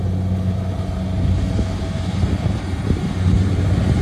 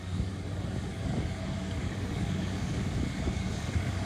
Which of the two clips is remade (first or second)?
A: second